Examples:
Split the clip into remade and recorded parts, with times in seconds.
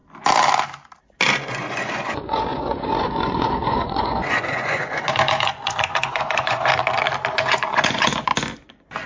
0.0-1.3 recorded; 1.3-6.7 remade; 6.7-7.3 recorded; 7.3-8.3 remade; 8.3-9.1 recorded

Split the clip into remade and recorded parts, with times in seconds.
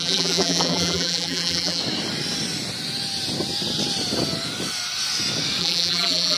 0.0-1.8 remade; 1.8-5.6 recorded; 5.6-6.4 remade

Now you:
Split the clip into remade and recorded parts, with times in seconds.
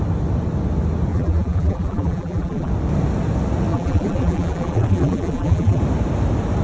0.0-1.1 recorded; 1.1-2.7 remade; 2.7-3.7 recorded; 3.7-5.8 remade; 5.8-6.6 recorded